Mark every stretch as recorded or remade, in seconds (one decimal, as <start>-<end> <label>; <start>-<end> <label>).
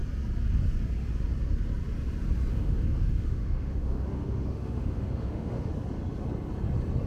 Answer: 0.0-2.5 recorded; 2.5-5.7 remade; 5.7-7.1 recorded